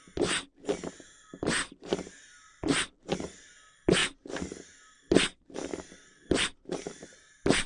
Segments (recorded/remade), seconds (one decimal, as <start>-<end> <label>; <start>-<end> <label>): 0.0-7.7 recorded